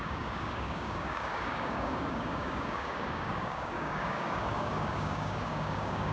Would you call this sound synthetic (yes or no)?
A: yes